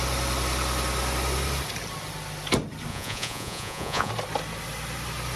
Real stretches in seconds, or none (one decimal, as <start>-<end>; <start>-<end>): 0.0-2.9; 4.1-5.4